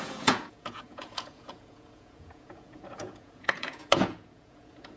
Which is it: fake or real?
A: fake